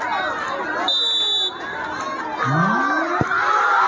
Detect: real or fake real